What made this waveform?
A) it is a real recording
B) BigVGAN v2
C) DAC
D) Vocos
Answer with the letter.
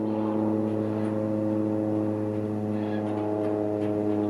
A